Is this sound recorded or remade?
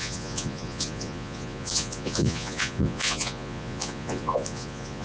remade